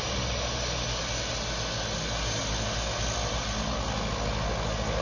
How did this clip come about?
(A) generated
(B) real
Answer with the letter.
B